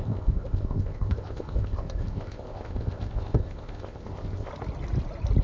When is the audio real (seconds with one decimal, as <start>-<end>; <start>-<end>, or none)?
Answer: 4.5-5.4